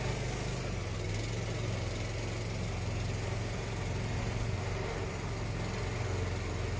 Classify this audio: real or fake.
real